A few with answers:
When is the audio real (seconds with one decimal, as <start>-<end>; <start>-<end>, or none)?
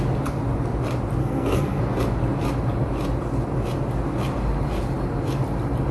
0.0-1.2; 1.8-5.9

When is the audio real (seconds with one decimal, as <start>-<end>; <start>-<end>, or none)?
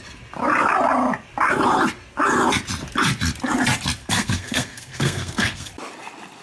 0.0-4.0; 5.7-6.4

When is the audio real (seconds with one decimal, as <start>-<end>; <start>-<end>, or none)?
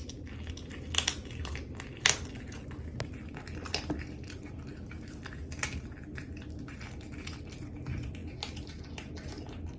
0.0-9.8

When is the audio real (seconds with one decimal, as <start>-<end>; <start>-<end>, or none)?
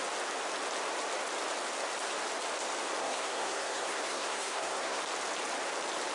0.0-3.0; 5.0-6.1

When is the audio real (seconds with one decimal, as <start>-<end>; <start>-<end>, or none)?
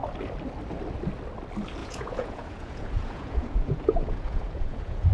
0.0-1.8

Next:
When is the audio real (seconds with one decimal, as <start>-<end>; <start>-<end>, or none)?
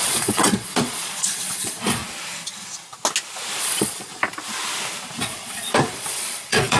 2.0-3.6; 4.1-5.2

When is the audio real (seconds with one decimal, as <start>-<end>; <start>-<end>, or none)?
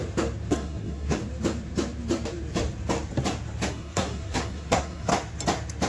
0.0-0.5; 1.2-3.7; 5.1-5.9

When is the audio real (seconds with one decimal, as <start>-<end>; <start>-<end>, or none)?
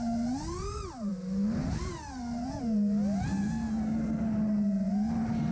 0.0-5.5